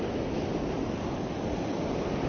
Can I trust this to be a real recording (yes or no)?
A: yes